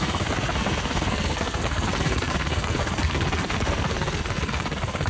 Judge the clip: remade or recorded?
remade